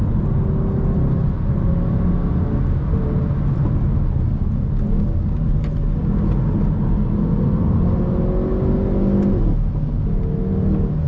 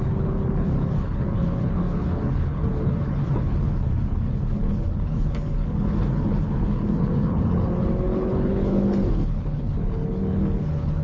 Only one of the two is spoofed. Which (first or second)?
second